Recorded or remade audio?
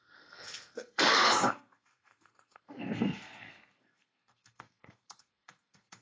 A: remade